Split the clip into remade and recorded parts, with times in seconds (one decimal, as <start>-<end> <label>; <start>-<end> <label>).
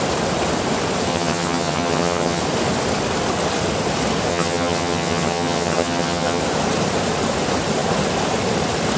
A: 0.0-1.1 recorded; 1.1-2.4 remade; 2.4-4.3 recorded; 4.3-6.4 remade; 6.4-9.0 recorded